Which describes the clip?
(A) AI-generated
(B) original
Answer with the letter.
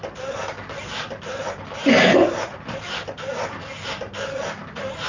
B